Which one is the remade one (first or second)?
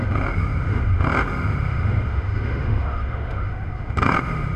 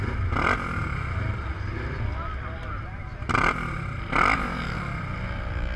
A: first